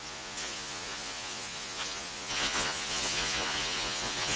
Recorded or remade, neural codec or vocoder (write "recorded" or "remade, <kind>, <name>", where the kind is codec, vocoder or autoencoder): remade, vocoder, Vocos